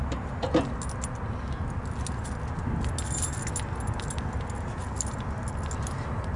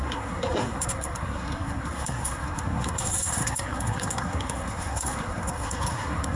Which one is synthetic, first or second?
second